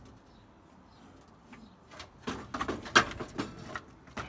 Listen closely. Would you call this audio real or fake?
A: real